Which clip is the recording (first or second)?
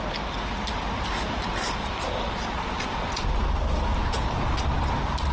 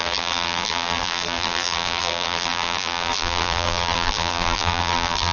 first